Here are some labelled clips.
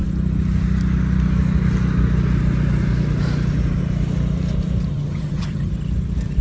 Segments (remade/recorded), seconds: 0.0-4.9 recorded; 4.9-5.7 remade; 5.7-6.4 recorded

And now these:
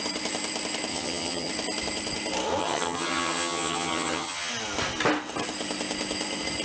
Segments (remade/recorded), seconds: 0.0-0.9 recorded; 0.9-1.5 remade; 1.5-2.6 recorded; 2.6-4.5 remade; 4.5-6.6 recorded

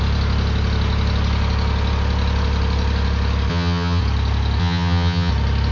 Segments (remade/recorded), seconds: 0.0-3.5 recorded; 3.5-4.0 remade; 4.0-4.6 recorded; 4.6-5.3 remade; 5.3-5.7 recorded